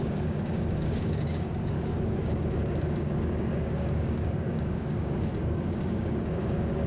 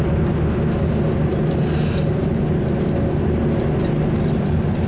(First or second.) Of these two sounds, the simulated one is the first